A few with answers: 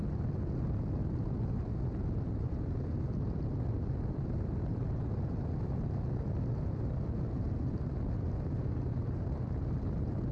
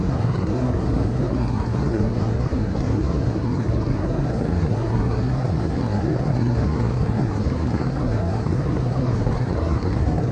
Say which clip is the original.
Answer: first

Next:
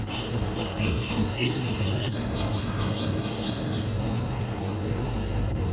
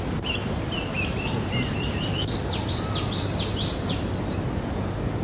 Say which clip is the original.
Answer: second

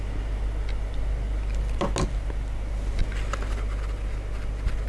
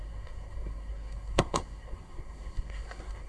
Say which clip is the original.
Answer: first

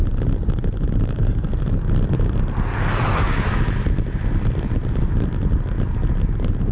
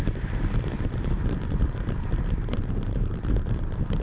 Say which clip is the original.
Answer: first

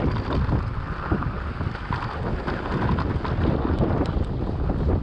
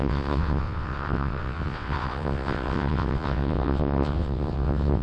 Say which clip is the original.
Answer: first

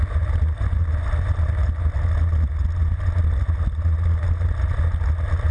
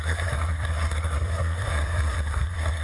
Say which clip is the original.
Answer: first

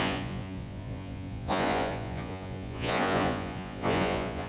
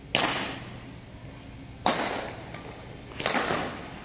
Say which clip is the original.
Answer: second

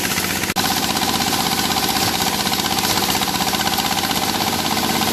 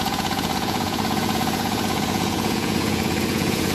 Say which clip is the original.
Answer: first